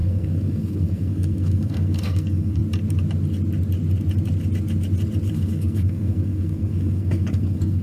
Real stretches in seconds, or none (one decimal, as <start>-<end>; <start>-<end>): 2.6-5.3

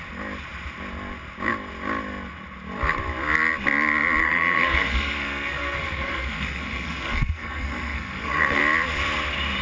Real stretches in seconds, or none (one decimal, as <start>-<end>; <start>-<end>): 0.0-4.2; 8.6-9.6

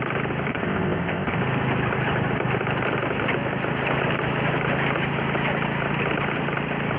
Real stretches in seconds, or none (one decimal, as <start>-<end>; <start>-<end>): 0.0-0.5; 1.4-7.0

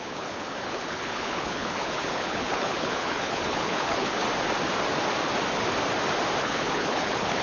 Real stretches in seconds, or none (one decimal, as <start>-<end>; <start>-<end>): 4.2-6.4